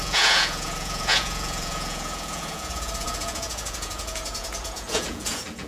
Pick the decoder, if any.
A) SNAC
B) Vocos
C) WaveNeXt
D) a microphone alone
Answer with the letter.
B